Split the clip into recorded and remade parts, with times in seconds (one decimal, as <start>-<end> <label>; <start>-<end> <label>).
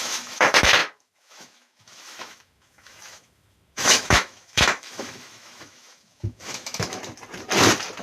0.0-7.0 remade; 7.0-8.0 recorded